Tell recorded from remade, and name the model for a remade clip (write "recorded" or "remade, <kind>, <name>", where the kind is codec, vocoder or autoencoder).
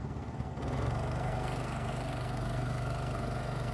remade, codec, SNAC